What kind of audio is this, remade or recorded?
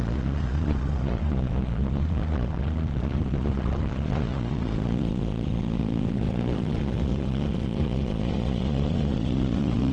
remade